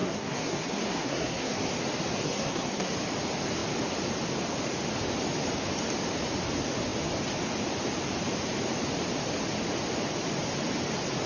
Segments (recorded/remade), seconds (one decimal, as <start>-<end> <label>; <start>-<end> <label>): 0.0-1.6 remade; 1.6-2.2 recorded; 2.2-2.9 remade; 2.9-11.3 recorded